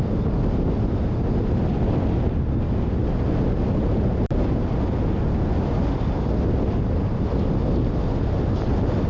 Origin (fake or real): real